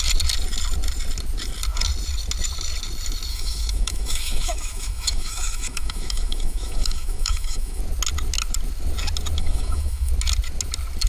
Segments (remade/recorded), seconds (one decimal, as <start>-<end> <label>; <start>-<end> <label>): 0.0-3.3 recorded; 3.3-7.8 remade; 7.8-9.4 recorded; 9.4-10.1 remade; 10.1-11.1 recorded